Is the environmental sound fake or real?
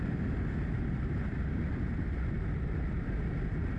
real